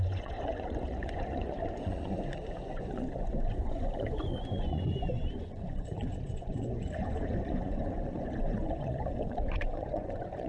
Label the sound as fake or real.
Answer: fake